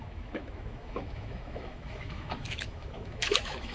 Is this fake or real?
fake